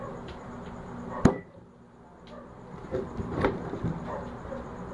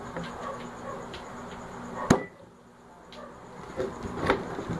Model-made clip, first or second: first